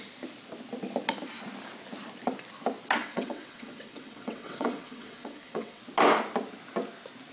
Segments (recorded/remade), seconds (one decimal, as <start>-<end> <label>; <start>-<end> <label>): 0.0-3.0 recorded; 3.0-5.8 remade; 5.8-7.3 recorded